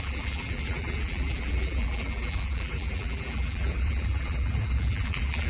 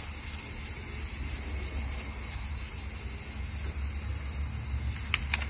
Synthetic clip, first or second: first